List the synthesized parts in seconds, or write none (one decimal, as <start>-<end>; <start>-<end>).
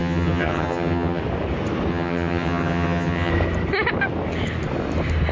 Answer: 0.0-1.2; 1.9-3.3